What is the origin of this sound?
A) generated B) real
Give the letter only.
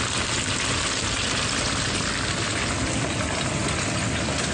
B